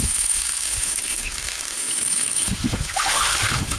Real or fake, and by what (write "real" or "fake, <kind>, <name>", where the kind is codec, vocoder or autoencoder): fake, autoencoder, DAC-VAE